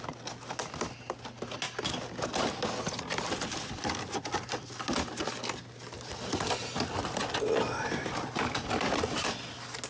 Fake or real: real